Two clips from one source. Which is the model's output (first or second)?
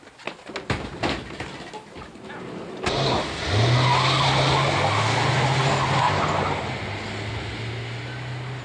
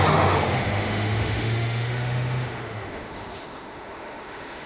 second